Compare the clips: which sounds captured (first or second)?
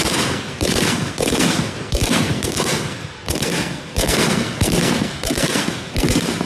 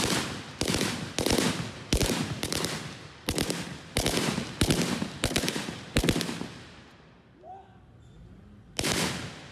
second